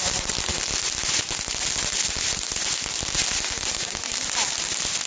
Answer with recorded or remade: recorded